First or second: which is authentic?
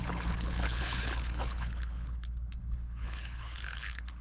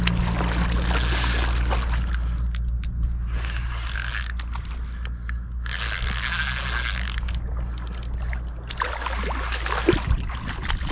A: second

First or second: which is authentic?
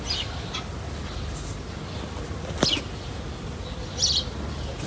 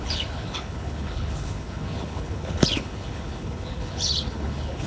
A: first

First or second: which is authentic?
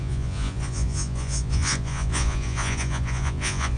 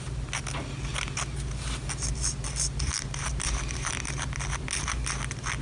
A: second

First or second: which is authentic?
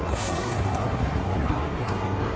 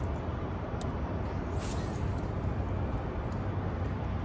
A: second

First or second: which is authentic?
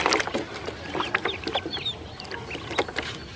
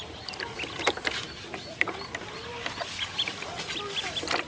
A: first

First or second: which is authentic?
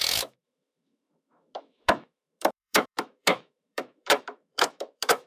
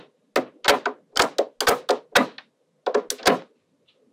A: second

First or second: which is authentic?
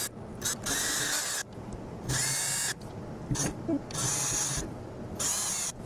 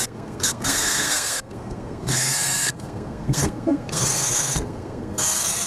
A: first